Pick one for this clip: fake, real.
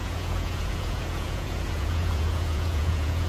fake